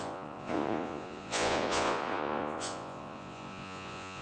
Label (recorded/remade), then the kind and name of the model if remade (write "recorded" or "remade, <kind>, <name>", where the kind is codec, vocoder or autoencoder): remade, vocoder, Vocos